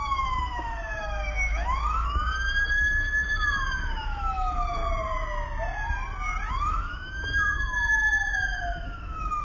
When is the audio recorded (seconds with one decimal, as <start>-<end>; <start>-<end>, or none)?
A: 4.8-6.5